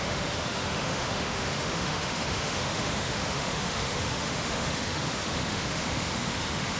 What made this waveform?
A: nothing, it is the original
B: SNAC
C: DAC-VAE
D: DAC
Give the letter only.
C